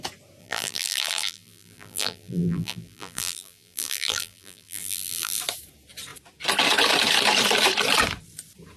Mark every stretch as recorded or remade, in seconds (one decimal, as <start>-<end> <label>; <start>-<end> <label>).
0.0-0.4 recorded; 0.4-5.4 remade; 5.4-8.8 recorded